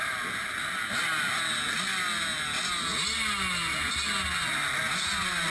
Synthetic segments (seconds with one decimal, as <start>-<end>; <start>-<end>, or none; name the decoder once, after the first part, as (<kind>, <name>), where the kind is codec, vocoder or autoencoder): none